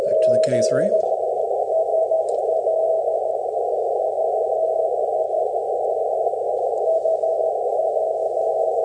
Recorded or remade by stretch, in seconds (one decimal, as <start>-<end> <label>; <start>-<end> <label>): 0.0-8.8 recorded